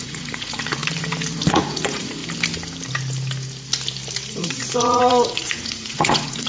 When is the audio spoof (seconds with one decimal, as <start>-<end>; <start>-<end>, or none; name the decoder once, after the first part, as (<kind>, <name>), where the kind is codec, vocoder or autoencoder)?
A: 0.0-0.8 (vocoder, Vocos); 1.5-2.2; 4.3-6.5